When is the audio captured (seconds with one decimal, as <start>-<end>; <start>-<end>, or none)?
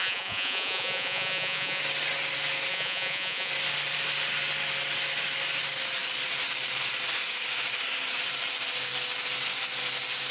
1.8-2.7; 3.5-10.3